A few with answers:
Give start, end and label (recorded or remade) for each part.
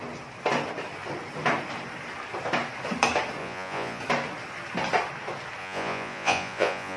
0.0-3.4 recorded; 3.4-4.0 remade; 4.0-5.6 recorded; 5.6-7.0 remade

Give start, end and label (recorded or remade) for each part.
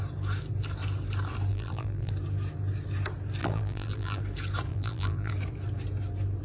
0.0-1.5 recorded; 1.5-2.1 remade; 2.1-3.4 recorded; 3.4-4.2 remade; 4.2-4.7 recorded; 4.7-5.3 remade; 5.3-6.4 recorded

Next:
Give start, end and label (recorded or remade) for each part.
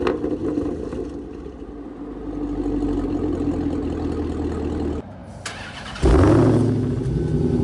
0.0-7.6 recorded